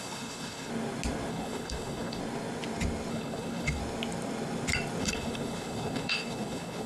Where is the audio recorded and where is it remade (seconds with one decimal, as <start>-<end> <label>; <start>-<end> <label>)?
0.0-0.7 remade; 0.7-1.3 recorded; 1.3-2.2 remade; 2.2-3.1 recorded; 3.1-3.8 remade; 3.8-5.0 recorded; 5.0-6.9 remade